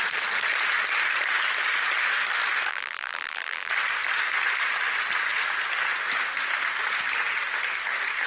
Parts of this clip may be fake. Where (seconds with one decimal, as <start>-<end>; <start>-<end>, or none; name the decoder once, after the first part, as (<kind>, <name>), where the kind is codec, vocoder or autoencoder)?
2.7-3.7 (vocoder, BigVGAN v2)